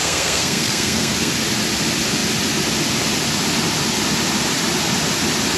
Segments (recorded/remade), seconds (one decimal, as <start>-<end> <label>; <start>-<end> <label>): 0.0-1.3 remade; 1.3-5.6 recorded